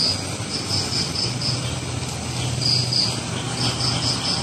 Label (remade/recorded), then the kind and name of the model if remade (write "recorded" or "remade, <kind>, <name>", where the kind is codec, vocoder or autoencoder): recorded